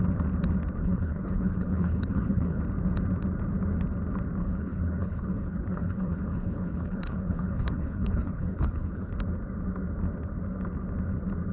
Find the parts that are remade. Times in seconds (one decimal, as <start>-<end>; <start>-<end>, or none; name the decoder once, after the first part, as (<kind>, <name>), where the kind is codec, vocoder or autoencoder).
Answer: 0.8-2.6 (codec, HILCodec); 4.4-9.1